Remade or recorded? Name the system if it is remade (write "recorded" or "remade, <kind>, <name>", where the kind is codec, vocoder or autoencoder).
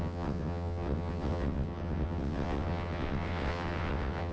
remade, vocoder, WaveNeXt